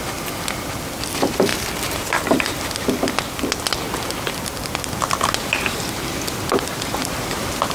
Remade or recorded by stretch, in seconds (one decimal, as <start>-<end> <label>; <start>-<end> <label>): 0.0-7.7 recorded